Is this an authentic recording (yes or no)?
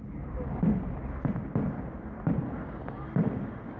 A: yes